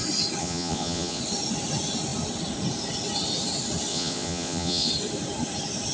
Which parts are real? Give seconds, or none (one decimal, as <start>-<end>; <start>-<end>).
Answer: 0.0-0.4; 1.2-3.9; 4.9-5.9